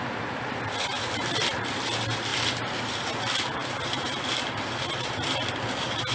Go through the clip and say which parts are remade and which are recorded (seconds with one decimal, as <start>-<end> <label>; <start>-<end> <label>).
0.0-6.1 recorded